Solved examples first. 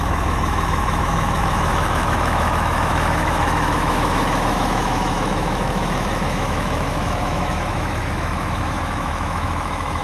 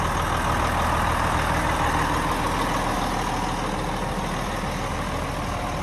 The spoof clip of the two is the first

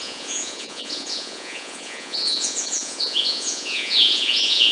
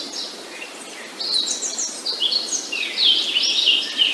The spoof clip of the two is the first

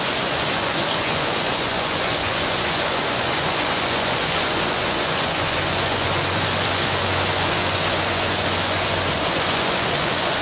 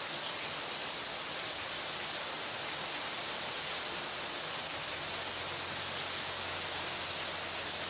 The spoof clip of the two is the first